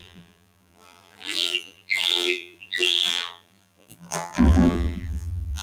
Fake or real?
fake